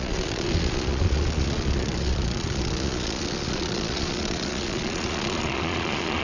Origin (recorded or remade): remade